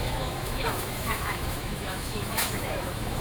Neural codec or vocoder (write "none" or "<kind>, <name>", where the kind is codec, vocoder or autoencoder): autoencoder, DAC-VAE